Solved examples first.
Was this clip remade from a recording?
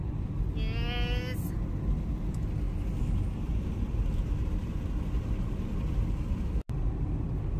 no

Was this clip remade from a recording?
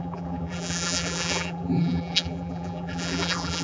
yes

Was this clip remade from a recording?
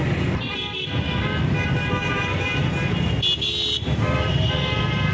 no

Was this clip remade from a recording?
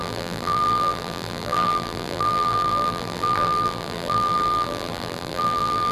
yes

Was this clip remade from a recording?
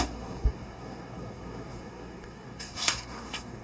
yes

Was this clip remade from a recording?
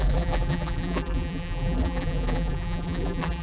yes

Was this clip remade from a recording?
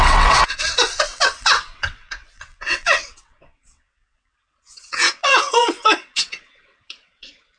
yes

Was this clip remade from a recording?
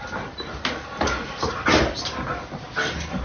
no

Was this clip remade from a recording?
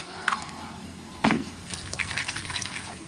yes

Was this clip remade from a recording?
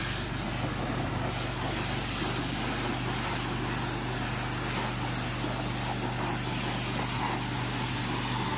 no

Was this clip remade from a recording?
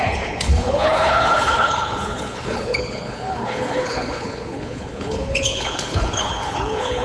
yes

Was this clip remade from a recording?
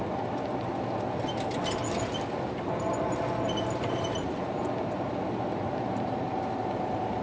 no